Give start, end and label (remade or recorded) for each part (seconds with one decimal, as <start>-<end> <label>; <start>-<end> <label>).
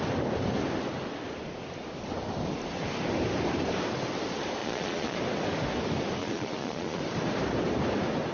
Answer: 0.0-4.6 recorded; 4.6-5.2 remade; 5.2-6.2 recorded; 6.2-7.0 remade; 7.0-8.3 recorded